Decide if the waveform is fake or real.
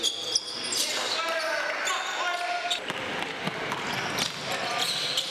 real